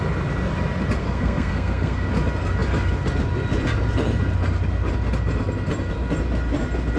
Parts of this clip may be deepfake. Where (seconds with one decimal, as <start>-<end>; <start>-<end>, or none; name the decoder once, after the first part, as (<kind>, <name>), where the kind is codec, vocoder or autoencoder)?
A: 1.0-2.1 (codec, SNAC)